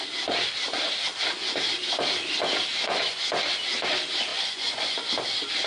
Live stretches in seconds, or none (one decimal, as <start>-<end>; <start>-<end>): 0.0-2.7; 3.3-4.3; 5.1-5.7